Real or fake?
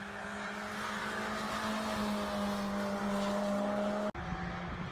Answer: real